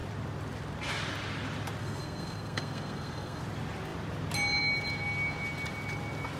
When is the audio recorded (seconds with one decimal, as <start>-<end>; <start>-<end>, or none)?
0.0-1.8; 3.4-6.4